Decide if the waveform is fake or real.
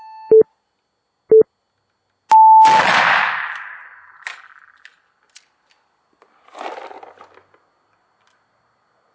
real